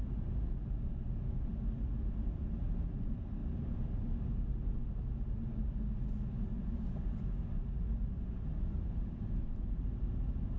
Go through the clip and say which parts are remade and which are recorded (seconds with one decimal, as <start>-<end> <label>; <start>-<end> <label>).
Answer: 0.0-10.6 recorded

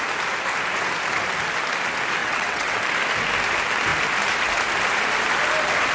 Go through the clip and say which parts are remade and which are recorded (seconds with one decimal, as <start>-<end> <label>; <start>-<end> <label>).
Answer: 0.0-2.2 recorded; 2.2-2.8 remade; 2.8-5.9 recorded

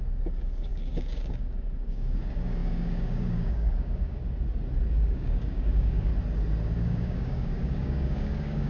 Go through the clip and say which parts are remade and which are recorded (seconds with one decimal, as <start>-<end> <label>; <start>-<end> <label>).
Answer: 0.0-4.2 remade; 4.2-4.9 recorded; 4.9-6.1 remade; 6.1-6.7 recorded; 6.7-8.7 remade